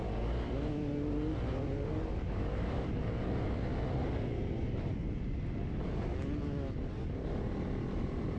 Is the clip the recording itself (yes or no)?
yes